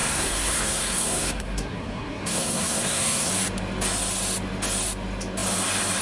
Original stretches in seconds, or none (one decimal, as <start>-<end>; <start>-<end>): 3.3-6.0